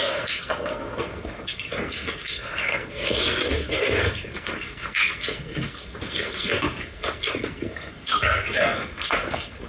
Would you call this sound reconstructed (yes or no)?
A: yes